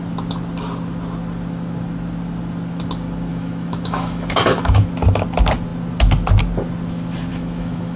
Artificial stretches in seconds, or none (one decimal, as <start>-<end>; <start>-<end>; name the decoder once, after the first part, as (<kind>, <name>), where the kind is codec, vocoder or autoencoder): 3.3-4.9 (autoencoder, DAC-VAE); 7.3-8.0